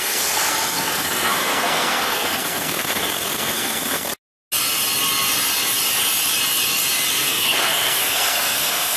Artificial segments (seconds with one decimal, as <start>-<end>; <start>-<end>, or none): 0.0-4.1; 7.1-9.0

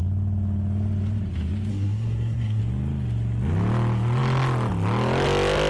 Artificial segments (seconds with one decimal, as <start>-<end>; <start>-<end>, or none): 1.7-2.6

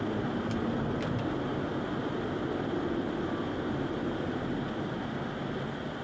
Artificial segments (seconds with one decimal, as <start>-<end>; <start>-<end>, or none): none